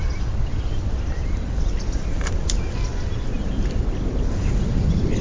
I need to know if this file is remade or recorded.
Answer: recorded